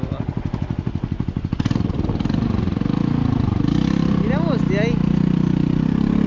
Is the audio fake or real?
real